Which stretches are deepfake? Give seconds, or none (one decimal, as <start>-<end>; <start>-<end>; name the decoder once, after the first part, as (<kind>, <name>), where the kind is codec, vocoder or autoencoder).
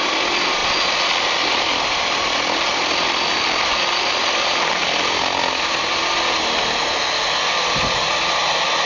none